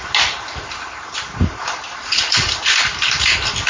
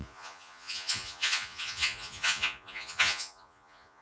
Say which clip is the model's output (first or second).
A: second